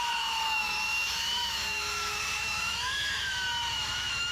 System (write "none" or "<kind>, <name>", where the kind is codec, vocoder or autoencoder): autoencoder, DAC-VAE